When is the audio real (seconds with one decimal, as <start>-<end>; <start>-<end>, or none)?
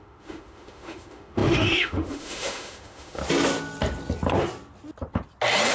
3.2-5.7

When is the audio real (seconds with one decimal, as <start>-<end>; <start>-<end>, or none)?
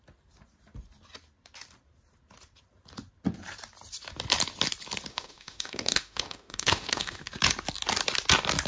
0.0-5.1; 7.3-8.7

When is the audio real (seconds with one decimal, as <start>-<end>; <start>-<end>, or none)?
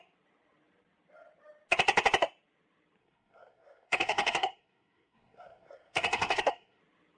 0.0-3.0; 6.8-7.2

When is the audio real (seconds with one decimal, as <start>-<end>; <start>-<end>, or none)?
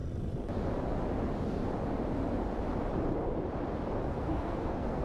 0.0-4.1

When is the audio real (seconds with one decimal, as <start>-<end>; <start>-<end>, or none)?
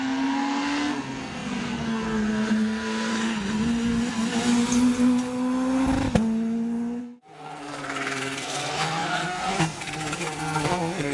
3.1-7.0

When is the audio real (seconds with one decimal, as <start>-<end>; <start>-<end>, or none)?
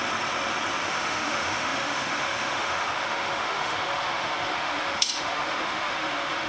0.0-0.8